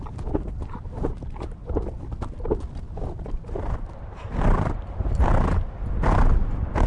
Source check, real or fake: real